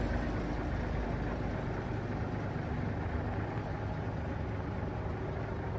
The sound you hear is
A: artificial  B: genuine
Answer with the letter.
B